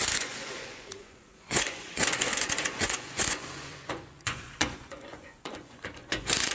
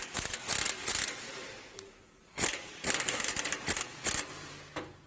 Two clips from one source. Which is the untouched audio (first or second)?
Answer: second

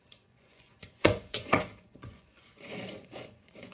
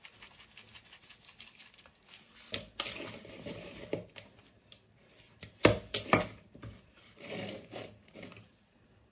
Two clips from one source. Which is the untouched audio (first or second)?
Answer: second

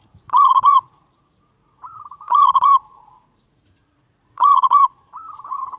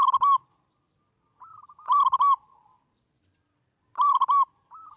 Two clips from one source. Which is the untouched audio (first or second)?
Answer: second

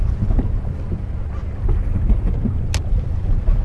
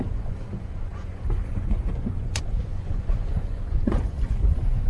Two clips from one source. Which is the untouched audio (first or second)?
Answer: first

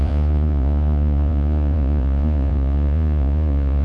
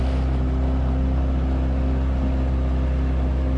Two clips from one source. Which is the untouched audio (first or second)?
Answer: second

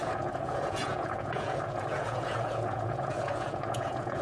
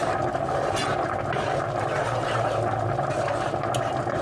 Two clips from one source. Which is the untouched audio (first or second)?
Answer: second